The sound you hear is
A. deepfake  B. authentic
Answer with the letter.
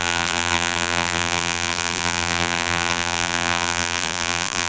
A